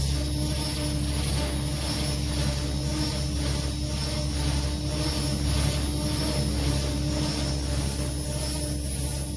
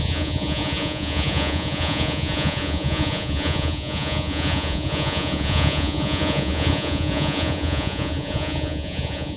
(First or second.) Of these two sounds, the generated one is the second